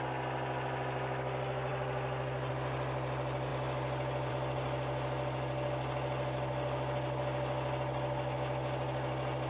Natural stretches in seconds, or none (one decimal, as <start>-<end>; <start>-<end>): 0.0-9.5